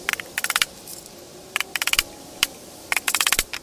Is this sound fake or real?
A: real